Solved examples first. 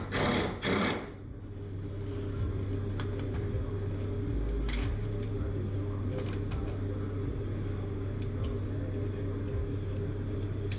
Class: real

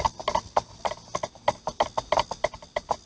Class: real